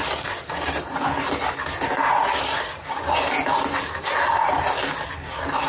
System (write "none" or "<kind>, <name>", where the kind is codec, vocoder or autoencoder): none